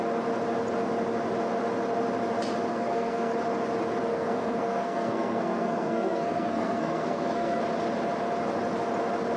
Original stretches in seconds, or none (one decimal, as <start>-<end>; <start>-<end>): 0.0-2.7; 3.3-4.1; 7.6-9.4